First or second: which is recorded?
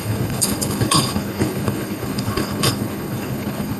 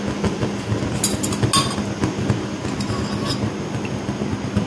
second